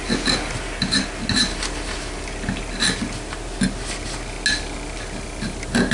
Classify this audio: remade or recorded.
recorded